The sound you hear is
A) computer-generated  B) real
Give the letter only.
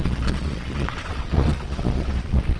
A